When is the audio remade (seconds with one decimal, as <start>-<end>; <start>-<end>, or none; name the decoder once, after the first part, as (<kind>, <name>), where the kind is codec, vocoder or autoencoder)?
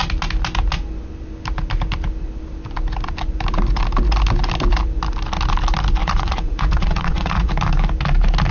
6.0-7.5 (vocoder, Vocos)